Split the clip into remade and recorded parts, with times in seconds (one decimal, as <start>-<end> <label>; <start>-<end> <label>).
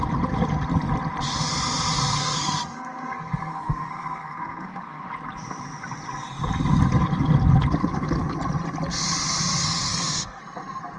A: 0.0-2.2 recorded; 2.2-5.1 remade; 5.1-9.9 recorded; 9.9-10.4 remade; 10.4-11.0 recorded